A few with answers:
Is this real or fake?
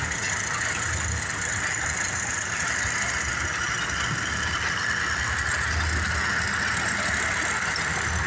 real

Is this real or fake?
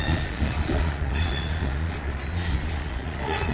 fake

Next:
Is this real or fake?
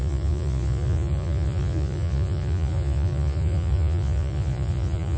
fake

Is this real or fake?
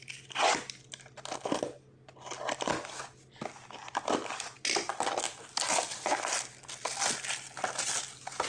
real